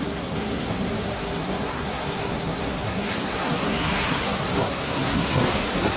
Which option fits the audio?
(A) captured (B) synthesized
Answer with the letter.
B